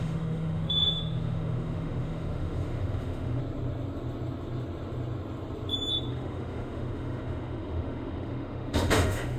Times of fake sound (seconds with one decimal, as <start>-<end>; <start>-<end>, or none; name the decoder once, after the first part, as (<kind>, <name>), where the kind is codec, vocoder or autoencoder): 0.0-3.4 (autoencoder, DAC-VAE); 6.1-9.4